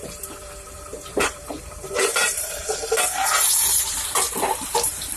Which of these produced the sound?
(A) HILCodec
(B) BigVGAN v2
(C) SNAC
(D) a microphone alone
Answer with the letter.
B